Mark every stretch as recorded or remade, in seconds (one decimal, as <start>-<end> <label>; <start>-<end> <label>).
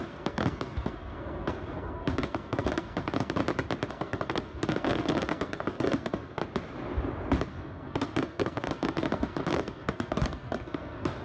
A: 0.0-3.4 remade; 3.4-3.9 recorded; 3.9-6.4 remade; 6.4-7.5 recorded; 7.5-11.2 remade